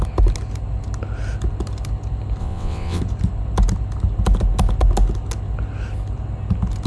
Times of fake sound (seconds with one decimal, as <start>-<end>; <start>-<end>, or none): 2.4-3.0

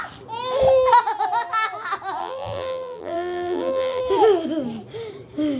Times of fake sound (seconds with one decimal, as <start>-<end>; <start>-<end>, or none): 2.2-4.0

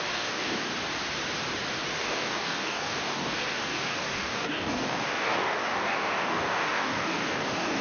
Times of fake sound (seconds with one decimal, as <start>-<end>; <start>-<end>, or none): 0.0-0.7; 2.0-7.8

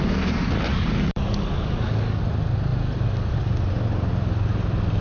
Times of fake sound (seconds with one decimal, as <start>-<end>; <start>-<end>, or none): 0.7-2.2

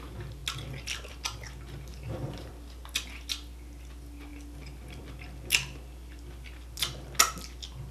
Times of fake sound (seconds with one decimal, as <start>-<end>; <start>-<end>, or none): 1.9-2.5

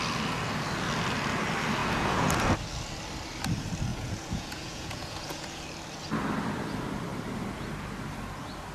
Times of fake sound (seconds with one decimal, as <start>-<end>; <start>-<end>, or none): 1.8-2.3; 3.9-5.6

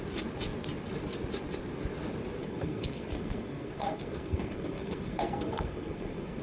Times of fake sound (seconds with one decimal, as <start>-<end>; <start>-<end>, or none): 2.4-6.4

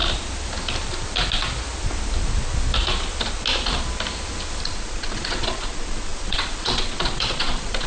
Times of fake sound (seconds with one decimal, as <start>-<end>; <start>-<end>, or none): 4.6-7.9